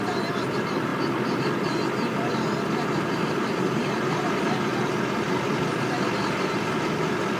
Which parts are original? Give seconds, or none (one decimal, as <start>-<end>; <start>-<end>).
0.0-7.4